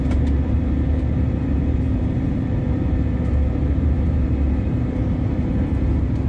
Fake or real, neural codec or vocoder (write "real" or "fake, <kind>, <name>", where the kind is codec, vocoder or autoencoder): fake, vocoder, BigVGAN v2